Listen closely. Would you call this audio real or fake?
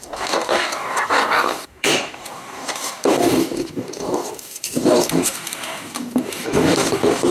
fake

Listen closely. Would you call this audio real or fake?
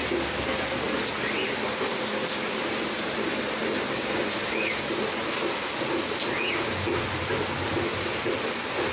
real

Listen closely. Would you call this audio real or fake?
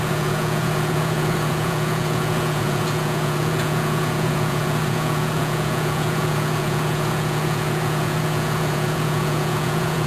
fake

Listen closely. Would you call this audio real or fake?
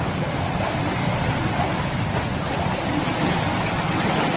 real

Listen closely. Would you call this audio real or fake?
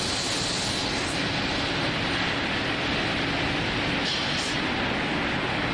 real